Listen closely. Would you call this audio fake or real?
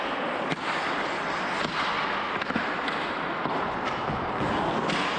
real